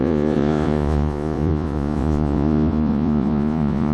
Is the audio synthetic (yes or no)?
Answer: yes